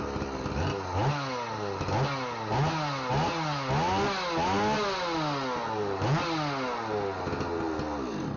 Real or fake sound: real